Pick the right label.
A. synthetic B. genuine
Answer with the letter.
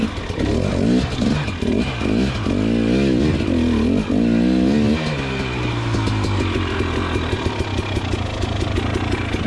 B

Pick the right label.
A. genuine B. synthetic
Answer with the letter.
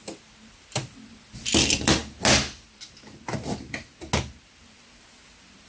A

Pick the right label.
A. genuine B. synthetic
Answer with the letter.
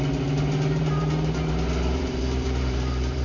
B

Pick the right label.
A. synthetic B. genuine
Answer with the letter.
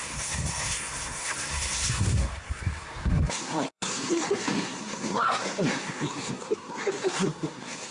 A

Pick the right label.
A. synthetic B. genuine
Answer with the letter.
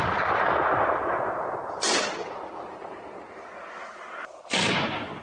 B